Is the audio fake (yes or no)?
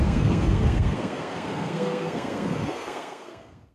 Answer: yes